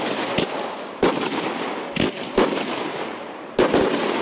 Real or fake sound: real